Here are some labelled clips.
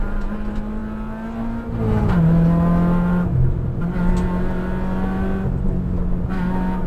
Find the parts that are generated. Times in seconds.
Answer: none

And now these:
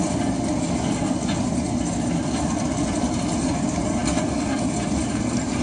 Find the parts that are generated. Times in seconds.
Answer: none